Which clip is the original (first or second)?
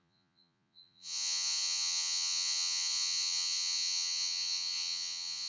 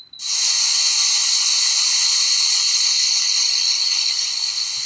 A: second